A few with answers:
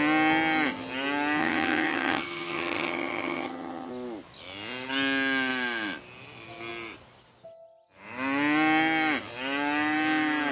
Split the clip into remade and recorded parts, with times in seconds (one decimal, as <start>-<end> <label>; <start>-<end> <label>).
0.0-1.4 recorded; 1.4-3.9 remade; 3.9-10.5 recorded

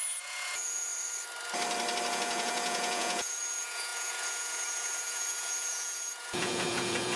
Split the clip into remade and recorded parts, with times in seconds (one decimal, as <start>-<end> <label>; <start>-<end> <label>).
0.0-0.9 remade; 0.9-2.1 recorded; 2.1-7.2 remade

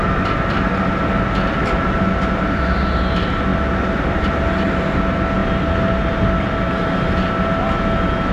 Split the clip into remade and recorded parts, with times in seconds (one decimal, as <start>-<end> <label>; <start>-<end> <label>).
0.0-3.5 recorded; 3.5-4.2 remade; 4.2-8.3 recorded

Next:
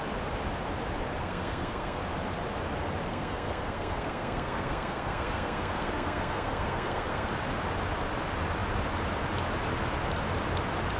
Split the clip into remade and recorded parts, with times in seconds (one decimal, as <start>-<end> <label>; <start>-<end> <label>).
0.0-1.2 recorded; 1.2-2.0 remade; 2.0-3.1 recorded; 3.1-7.3 remade; 7.3-11.0 recorded

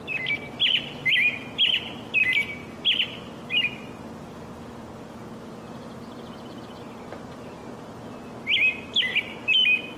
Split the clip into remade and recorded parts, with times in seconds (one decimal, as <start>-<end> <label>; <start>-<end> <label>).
0.0-10.0 recorded

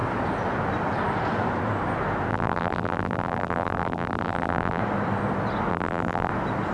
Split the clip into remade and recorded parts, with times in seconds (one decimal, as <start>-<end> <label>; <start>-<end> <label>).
0.0-2.3 recorded; 2.3-4.8 remade; 4.8-5.7 recorded; 5.7-6.3 remade; 6.3-6.7 recorded